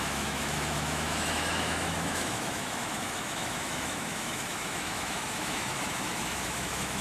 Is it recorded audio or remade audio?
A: remade